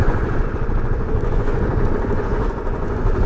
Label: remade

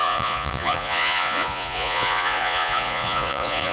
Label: remade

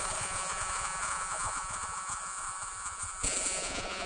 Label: remade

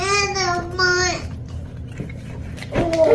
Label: recorded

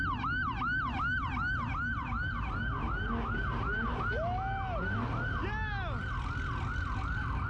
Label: recorded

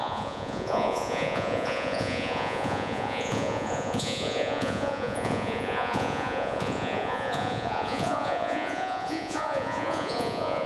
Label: remade